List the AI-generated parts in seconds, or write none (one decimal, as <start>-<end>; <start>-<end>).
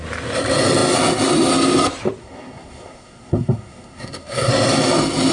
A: 2.2-4.5